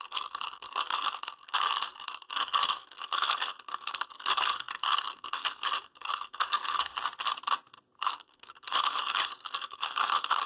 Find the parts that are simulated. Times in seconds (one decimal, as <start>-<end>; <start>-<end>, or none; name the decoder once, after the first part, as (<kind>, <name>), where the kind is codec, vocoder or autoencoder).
0.0-6.9 (codec, SNAC); 8.0-10.5